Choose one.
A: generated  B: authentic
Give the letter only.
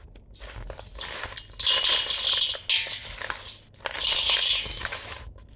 B